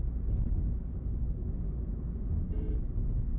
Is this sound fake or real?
real